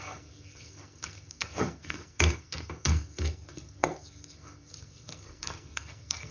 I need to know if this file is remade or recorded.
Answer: remade